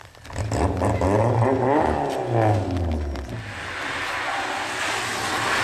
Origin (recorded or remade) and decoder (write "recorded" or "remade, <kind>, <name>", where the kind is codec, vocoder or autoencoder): recorded